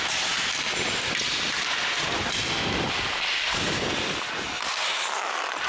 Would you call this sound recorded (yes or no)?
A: yes